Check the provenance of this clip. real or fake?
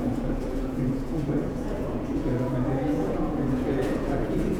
fake